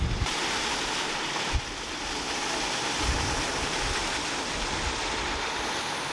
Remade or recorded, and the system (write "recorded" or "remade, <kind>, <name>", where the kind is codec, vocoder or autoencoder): recorded